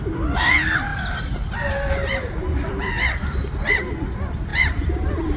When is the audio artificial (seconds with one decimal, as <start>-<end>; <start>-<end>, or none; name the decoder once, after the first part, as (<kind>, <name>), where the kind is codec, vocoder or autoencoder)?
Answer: 0.0-0.9 (vocoder, BigVGAN v2); 2.0-5.4